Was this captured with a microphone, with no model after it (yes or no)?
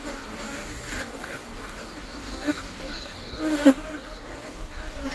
no